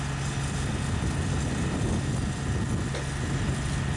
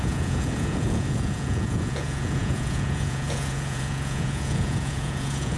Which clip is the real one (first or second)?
first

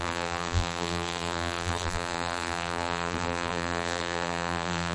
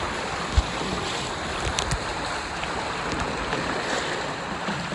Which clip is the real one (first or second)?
second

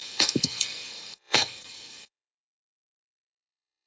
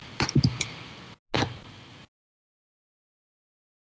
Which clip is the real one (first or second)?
second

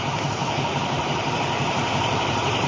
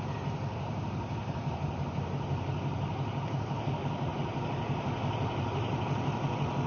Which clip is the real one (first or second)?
second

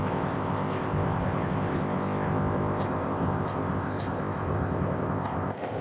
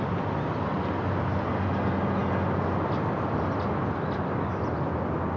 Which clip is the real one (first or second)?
second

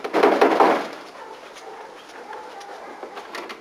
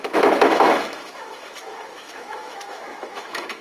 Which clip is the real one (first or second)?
first